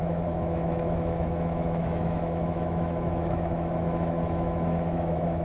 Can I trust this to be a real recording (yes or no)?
no